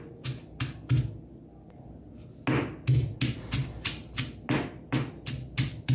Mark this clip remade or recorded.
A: recorded